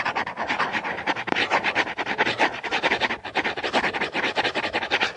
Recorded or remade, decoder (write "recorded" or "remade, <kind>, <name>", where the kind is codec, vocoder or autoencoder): remade, vocoder, BigVGAN v2